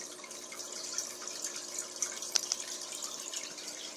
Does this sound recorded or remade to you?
recorded